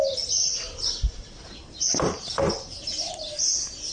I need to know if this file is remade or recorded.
recorded